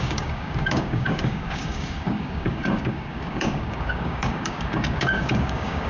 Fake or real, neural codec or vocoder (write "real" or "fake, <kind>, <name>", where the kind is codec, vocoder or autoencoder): fake, codec, DAC